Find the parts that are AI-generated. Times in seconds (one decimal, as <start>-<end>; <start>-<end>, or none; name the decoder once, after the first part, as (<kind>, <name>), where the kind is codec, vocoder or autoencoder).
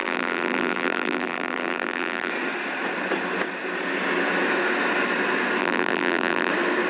0.0-2.3 (vocoder, BigVGAN v2); 5.6-6.5